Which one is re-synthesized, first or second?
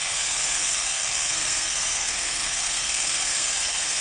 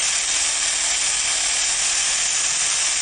first